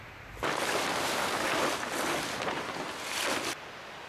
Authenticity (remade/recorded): recorded